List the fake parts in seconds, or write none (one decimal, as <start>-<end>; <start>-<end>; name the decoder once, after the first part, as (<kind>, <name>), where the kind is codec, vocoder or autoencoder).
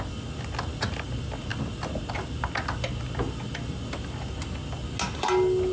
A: none